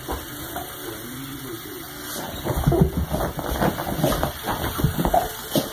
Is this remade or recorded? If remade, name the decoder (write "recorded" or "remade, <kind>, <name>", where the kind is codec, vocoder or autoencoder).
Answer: recorded